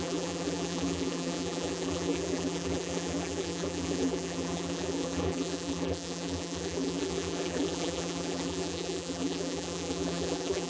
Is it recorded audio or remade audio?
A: remade